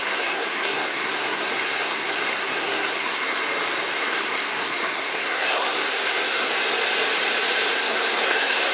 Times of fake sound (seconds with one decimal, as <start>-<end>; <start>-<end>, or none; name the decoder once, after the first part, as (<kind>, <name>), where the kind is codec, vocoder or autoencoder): 0.0-3.4 (codec, SNAC); 3.9-6.5; 7.7-8.7